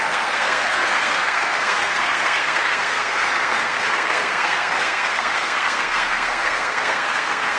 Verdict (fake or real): fake